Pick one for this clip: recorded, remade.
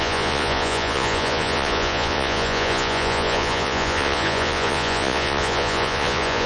remade